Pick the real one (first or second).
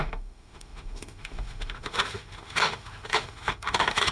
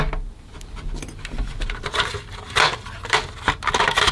second